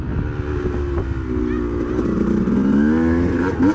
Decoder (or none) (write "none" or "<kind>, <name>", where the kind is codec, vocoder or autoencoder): none